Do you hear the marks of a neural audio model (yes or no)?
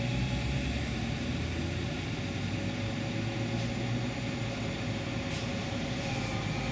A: no